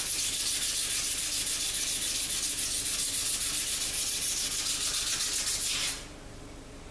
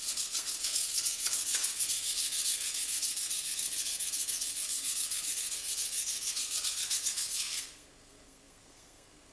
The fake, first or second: second